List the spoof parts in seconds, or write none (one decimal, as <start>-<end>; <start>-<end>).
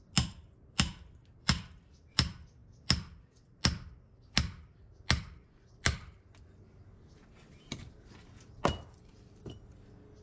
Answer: none